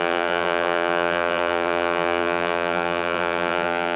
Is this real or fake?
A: fake